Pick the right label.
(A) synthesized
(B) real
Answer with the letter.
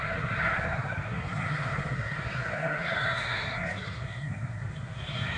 A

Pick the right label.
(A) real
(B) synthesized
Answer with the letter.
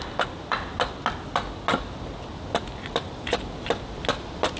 A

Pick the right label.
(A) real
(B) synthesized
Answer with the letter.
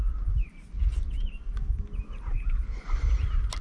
A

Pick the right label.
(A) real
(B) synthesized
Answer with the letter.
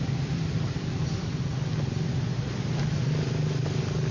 A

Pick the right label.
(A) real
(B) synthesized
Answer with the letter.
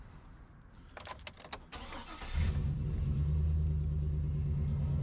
A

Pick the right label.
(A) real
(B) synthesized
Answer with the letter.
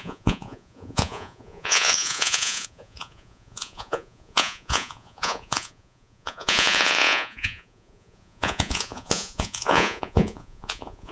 B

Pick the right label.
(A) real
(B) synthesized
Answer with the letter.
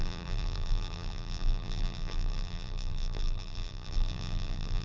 B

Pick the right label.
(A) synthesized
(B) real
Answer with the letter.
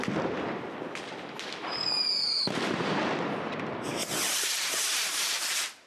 B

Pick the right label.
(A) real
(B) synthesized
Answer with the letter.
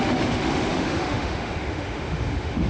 B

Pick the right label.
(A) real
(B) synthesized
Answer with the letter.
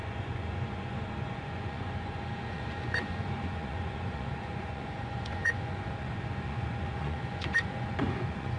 B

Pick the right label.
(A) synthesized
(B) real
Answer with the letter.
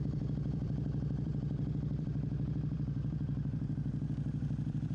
A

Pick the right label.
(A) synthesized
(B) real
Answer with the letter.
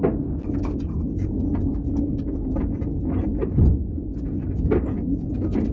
B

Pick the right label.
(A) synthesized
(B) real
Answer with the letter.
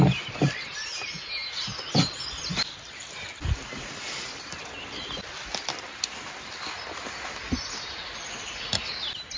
B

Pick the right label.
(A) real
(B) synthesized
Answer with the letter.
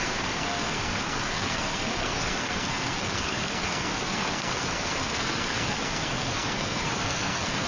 B